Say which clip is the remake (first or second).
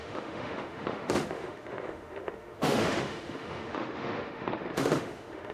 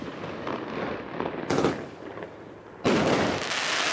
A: first